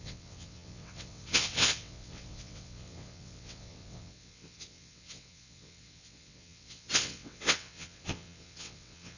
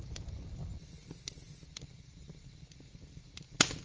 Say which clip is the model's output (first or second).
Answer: first